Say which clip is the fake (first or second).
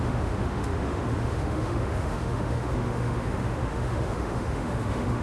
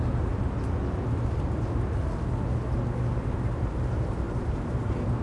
first